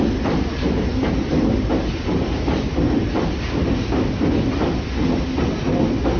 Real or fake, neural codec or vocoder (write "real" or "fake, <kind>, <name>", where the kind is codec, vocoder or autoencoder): real